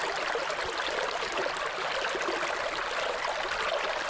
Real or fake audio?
real